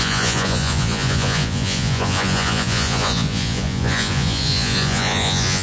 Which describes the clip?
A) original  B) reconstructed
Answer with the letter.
B